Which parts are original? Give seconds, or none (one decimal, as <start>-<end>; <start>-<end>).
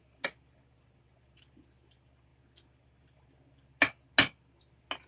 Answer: 0.0-5.1